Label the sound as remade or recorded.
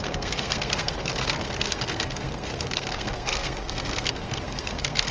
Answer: remade